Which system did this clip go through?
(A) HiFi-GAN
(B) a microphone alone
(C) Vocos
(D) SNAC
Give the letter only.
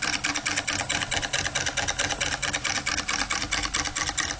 B